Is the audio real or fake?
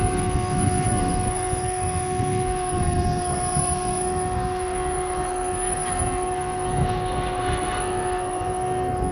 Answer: fake